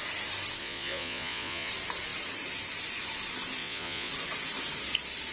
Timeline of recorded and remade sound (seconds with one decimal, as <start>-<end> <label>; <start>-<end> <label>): 0.0-0.6 recorded; 0.6-1.7 remade; 1.7-3.6 recorded; 3.6-4.1 remade; 4.1-5.3 recorded